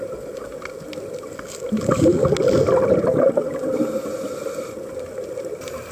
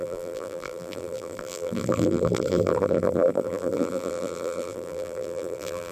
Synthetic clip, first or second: second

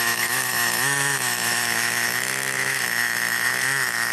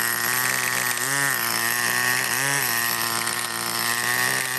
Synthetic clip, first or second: first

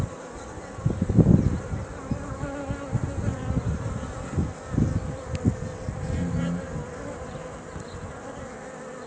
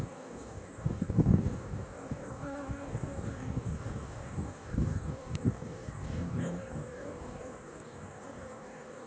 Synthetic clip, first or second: second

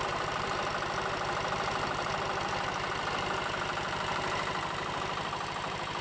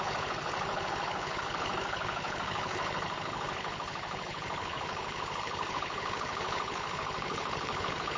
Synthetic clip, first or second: second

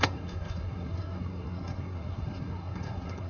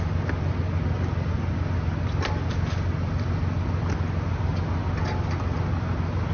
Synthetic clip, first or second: first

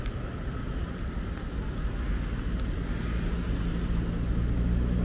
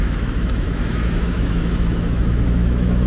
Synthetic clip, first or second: second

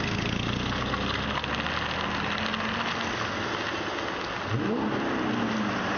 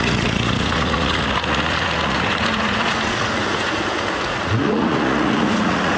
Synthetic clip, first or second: second